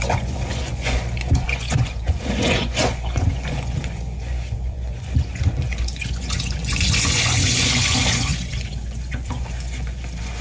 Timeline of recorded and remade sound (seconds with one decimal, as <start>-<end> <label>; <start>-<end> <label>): 0.0-10.4 remade

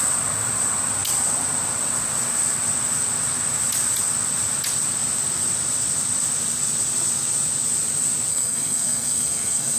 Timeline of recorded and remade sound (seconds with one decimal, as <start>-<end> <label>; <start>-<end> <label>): 0.0-8.3 recorded; 8.3-9.8 remade

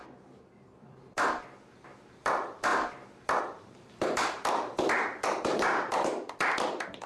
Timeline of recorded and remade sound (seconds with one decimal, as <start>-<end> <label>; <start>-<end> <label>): 0.0-2.7 remade; 2.7-3.4 recorded; 3.4-7.1 remade

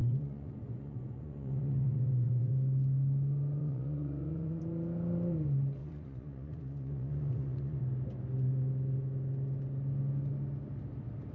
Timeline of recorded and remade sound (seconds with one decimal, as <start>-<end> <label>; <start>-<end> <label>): 0.0-2.5 remade; 2.5-3.6 recorded; 3.6-4.6 remade; 4.6-5.8 recorded; 5.8-7.8 remade; 7.8-11.3 recorded

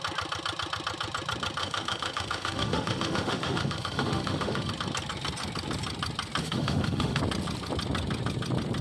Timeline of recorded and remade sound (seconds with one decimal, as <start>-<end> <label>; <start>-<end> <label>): 0.0-1.6 recorded; 1.6-4.7 remade; 4.7-6.4 recorded; 6.4-7.2 remade; 7.2-8.8 recorded

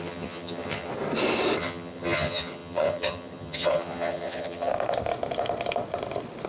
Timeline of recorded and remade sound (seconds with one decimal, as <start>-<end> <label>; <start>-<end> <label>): 0.0-0.9 remade; 0.9-1.6 recorded; 1.6-4.7 remade; 4.7-6.5 recorded

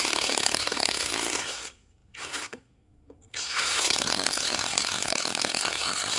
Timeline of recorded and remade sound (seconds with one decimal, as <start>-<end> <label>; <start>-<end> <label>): 0.0-6.2 remade

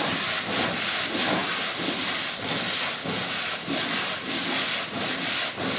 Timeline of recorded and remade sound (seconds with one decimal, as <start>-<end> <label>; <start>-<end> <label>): 0.0-5.8 recorded